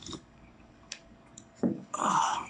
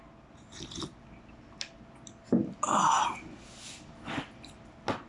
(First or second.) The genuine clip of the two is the second